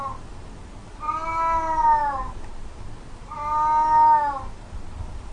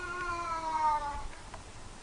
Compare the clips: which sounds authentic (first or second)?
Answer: first